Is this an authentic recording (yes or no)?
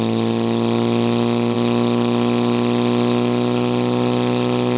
yes